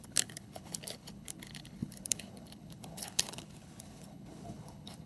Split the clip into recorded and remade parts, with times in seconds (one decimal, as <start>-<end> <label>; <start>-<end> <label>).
0.0-5.1 remade